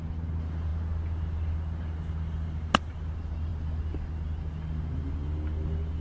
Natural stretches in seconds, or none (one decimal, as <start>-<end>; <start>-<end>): 0.0-6.0